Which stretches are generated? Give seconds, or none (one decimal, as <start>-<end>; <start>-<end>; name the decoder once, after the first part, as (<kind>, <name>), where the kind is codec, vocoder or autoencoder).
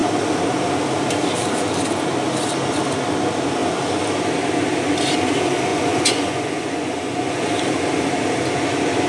5.7-7.5 (vocoder, Vocos)